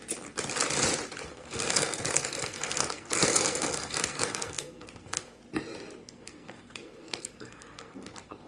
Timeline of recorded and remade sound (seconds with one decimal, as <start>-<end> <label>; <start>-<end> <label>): 0.0-1.3 recorded; 1.3-5.4 remade; 5.4-6.0 recorded; 6.0-8.5 remade